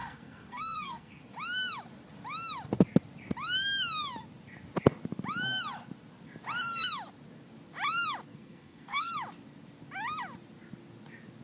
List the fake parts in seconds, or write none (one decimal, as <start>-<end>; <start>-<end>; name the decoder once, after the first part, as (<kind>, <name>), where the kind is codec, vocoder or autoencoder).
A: 0.0-1.2 (codec, SNAC); 8.3-9.1